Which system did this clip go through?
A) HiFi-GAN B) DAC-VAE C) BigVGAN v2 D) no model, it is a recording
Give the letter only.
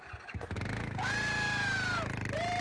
C